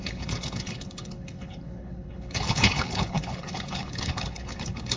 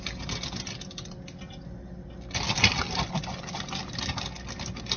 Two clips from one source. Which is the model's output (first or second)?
first